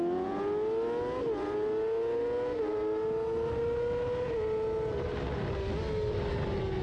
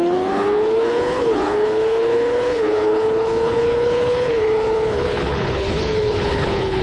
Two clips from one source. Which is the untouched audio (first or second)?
first